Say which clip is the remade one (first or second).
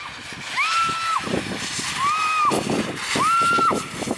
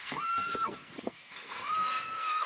second